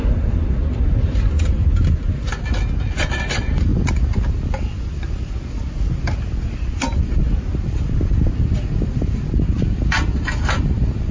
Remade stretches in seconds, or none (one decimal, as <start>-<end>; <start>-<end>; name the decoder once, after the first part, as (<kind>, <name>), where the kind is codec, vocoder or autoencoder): none

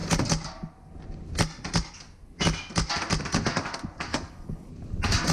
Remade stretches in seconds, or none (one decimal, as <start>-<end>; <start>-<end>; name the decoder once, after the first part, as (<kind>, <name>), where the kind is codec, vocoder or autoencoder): 4.1-4.7 (codec, DAC)

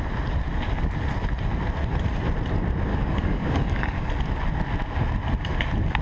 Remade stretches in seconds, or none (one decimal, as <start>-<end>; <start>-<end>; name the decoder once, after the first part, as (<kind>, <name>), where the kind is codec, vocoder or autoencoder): 2.9-4.1 (codec, DAC)

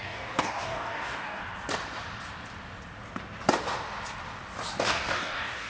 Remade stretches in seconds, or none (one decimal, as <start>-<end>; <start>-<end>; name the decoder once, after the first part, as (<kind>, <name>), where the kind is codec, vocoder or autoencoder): 0.0-1.4 (codec, DAC); 4.8-5.7

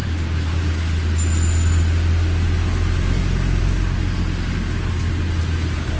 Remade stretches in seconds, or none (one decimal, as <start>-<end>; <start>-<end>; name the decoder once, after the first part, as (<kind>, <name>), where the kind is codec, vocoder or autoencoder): none

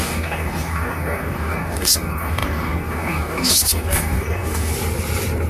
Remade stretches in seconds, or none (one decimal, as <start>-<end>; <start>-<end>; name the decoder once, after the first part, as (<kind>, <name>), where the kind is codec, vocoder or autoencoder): 0.0-4.7 (codec, DAC)

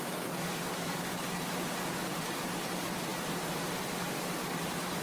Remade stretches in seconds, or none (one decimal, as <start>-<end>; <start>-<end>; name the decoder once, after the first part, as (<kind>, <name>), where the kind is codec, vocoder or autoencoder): 0.7-1.2 (codec, DAC)